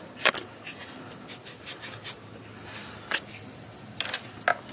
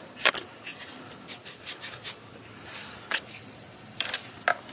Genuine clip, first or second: first